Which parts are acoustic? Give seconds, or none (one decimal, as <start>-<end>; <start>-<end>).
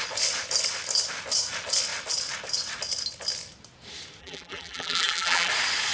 0.0-4.2; 5.5-5.9